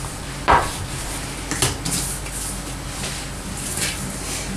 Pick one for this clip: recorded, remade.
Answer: recorded